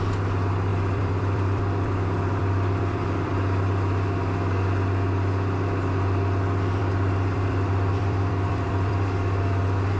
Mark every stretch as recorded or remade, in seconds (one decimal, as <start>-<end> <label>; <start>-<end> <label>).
0.0-0.7 recorded; 0.7-3.3 remade; 3.3-6.8 recorded; 6.8-9.5 remade; 9.5-10.0 recorded